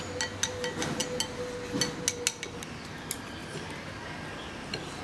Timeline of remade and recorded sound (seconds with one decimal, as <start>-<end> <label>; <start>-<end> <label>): 0.0-5.0 recorded